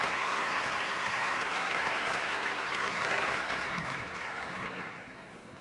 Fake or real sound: fake